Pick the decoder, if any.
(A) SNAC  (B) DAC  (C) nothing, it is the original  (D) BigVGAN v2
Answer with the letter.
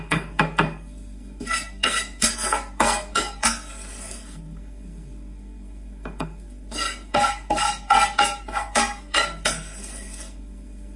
A